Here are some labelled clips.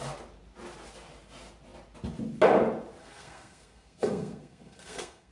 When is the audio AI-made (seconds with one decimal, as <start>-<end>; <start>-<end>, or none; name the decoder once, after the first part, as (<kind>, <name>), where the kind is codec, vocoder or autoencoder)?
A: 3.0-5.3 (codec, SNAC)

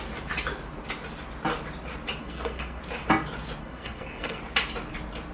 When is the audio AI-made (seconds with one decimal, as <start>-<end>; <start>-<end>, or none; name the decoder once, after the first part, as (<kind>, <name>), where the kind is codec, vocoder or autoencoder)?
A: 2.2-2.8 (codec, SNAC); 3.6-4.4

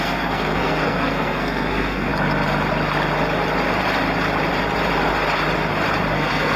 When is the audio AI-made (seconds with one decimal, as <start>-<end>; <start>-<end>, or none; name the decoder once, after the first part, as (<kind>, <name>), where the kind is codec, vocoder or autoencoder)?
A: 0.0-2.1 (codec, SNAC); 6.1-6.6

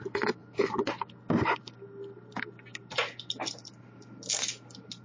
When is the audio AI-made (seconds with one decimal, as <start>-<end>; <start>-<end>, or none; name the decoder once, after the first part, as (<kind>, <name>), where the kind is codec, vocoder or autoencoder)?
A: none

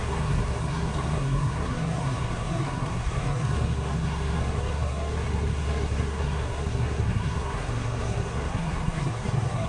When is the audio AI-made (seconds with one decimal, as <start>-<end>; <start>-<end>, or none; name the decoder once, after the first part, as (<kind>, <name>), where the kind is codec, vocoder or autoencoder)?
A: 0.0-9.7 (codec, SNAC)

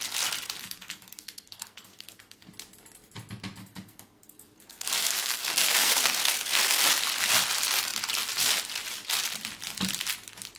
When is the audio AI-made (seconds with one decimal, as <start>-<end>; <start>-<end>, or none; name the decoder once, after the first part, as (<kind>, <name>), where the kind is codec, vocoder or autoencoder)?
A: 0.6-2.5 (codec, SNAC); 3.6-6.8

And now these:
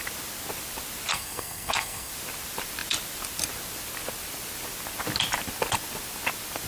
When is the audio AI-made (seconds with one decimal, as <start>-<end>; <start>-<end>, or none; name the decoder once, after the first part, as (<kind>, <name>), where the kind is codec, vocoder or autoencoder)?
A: 1.1-2.1 (codec, SNAC)